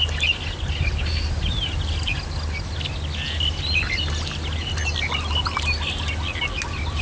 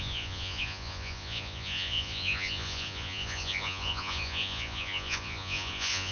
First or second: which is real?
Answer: first